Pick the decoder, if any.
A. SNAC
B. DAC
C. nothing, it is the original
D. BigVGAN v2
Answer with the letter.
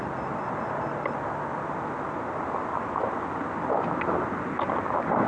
C